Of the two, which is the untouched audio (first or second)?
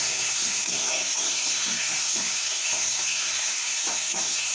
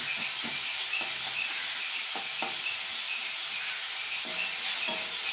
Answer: second